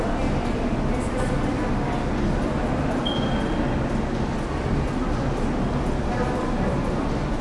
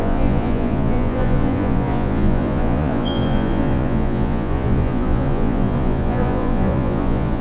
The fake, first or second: second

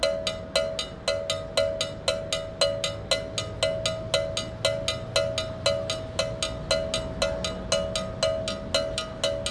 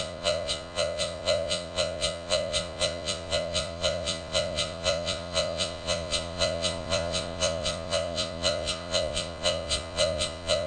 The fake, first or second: second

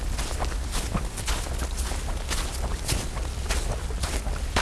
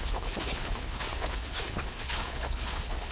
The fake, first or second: second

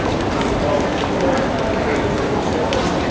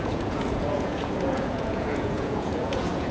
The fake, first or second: second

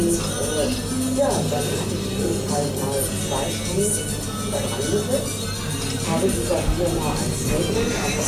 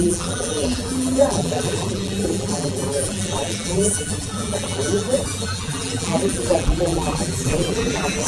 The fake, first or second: second